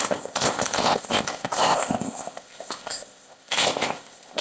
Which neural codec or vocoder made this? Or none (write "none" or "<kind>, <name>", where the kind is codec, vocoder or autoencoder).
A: codec, ZipCodec